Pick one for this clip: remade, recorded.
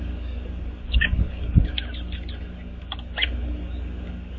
remade